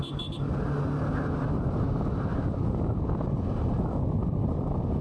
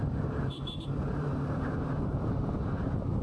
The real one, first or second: first